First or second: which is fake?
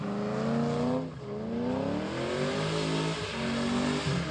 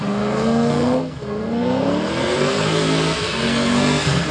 second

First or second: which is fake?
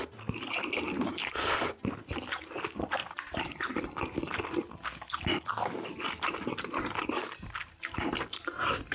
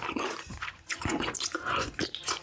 second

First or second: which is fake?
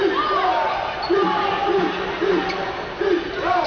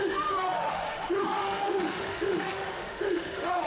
second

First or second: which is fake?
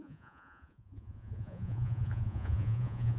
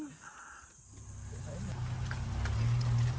first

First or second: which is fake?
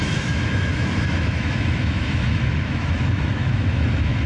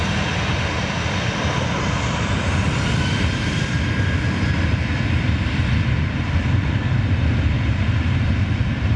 first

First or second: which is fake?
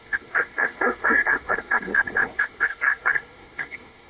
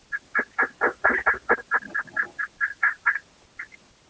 first